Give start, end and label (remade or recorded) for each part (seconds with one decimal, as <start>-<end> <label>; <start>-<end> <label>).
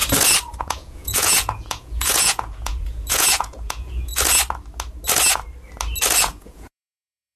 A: 0.0-0.6 recorded; 0.6-4.1 remade; 4.1-6.2 recorded; 6.2-7.4 remade